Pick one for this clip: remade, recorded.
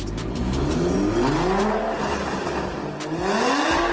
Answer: recorded